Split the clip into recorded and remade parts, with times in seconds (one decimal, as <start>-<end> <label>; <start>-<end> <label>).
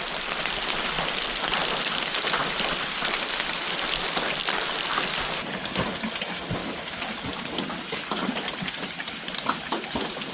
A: 0.0-2.4 recorded; 2.4-3.4 remade; 3.4-10.3 recorded